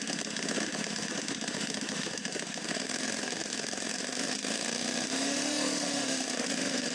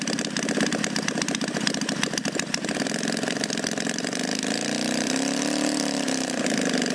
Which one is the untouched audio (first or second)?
second